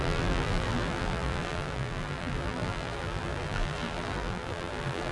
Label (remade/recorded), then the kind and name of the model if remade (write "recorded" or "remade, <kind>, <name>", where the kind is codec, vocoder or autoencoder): remade, vocoder, BigVGAN v2